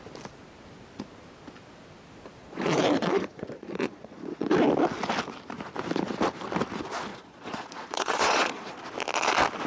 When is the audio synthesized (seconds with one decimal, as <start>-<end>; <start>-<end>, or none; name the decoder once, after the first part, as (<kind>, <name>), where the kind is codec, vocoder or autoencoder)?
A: 2.4-4.5 (vocoder, Vocos); 7.1-8.8

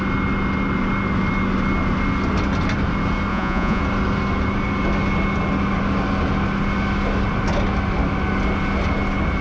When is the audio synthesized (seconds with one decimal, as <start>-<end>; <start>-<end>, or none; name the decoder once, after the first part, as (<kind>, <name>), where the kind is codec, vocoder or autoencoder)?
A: 3.3-3.8 (vocoder, Vocos)